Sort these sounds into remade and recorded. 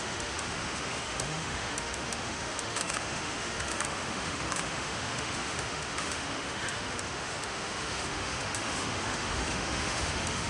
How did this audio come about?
remade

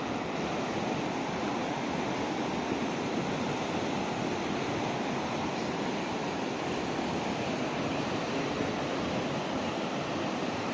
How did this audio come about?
recorded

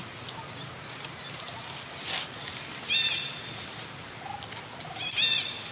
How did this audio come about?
recorded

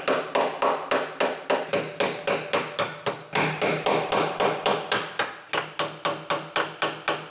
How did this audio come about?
recorded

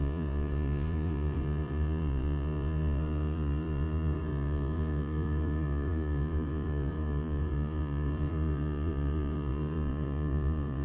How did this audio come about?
remade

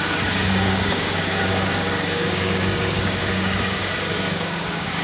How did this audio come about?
remade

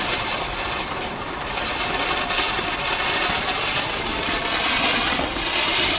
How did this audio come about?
recorded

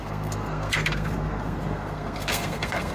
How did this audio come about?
remade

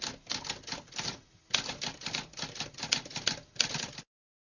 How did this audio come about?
recorded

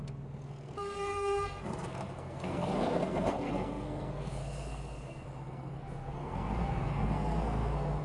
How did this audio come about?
remade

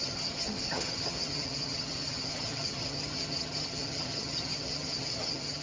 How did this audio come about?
remade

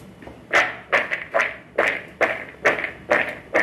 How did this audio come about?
recorded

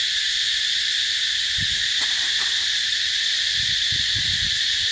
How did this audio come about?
remade